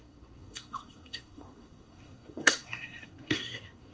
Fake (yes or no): yes